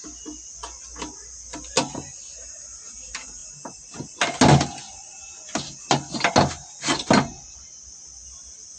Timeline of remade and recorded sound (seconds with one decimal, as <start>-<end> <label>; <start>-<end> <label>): 0.0-8.8 recorded